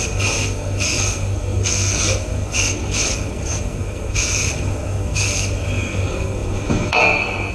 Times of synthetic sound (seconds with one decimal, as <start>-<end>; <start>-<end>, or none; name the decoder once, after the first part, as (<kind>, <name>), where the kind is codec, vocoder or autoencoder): 0.0-7.5 (codec, SNAC)